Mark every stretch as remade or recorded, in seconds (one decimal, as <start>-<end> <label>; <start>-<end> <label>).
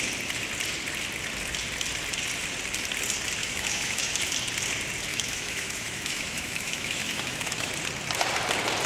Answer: 0.0-3.4 recorded; 3.4-4.1 remade; 4.1-5.1 recorded; 5.1-7.7 remade; 7.7-8.9 recorded